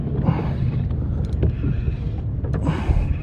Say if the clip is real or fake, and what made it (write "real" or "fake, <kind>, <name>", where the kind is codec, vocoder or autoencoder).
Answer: real